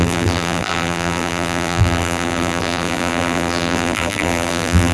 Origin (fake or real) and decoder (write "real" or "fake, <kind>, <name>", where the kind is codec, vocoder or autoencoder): fake, vocoder, BigVGAN v2